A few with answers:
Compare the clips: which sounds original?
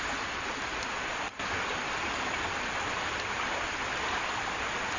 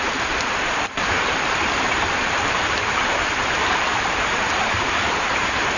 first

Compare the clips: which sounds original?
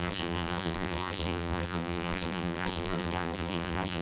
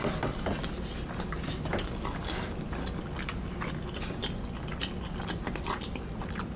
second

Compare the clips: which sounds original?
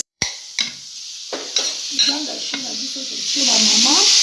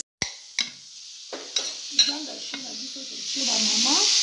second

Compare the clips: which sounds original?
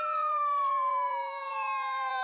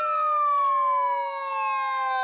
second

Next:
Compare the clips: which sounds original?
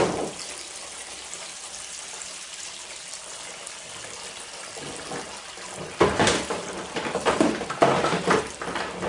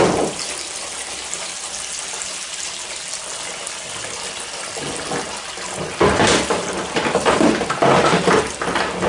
second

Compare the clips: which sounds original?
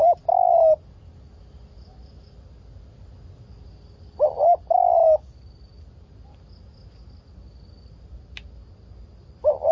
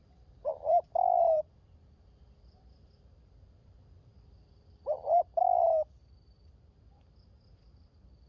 first